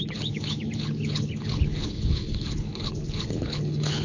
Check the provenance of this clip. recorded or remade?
remade